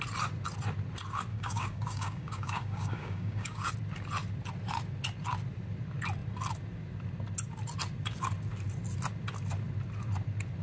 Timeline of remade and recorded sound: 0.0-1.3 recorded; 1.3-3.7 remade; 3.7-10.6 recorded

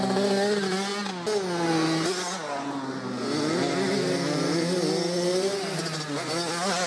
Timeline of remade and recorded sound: 0.0-6.9 recorded

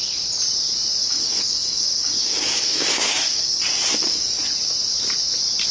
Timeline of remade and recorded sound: 0.0-1.0 recorded; 1.0-4.4 remade; 4.4-5.7 recorded

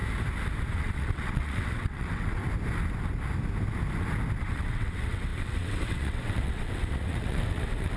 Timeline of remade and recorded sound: 0.0-0.7 recorded; 0.7-2.4 remade; 2.4-4.4 recorded; 4.4-8.0 remade

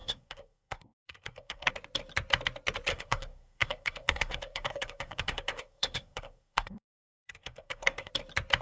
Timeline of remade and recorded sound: 0.0-1.7 remade; 1.7-2.9 recorded; 2.9-8.1 remade; 8.1-8.6 recorded

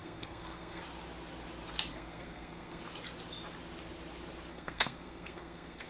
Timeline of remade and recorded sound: 0.0-0.8 remade; 0.8-1.9 recorded; 1.9-2.8 remade; 2.8-4.5 recorded; 4.5-5.9 remade

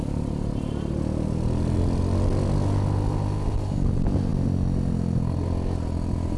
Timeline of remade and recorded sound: 0.0-6.4 recorded